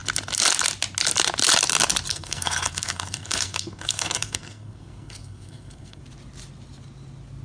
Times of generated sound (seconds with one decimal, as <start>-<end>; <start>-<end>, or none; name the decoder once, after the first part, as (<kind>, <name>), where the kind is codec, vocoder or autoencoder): 2.1-6.0 (codec, SNAC)